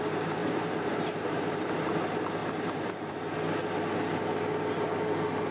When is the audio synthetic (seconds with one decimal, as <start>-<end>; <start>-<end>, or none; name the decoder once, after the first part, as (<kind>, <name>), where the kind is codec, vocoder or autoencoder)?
0.4-1.9 (vocoder, BigVGAN v2); 2.4-3.1